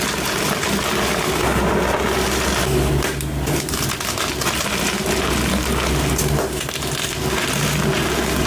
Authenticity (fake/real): real